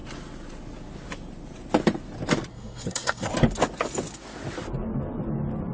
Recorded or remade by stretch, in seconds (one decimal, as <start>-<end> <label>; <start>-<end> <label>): 0.0-2.5 recorded; 2.5-3.3 remade; 3.3-5.7 recorded

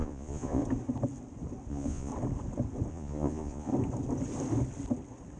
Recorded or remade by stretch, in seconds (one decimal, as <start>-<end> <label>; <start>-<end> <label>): 0.0-0.6 remade; 0.6-1.7 recorded; 1.7-2.1 remade; 2.1-2.9 recorded; 2.9-3.7 remade; 3.7-5.4 recorded

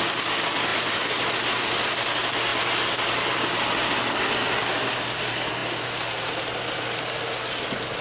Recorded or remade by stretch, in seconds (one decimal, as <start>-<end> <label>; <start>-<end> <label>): 0.0-8.0 recorded

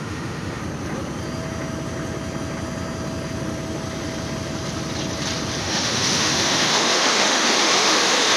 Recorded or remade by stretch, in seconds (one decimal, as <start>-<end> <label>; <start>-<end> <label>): 0.0-0.6 remade; 0.6-5.6 recorded; 5.6-8.4 remade

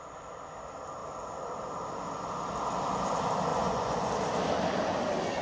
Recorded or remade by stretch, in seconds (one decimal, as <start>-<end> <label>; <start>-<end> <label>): 0.0-3.5 recorded; 3.5-4.1 remade; 4.1-5.4 recorded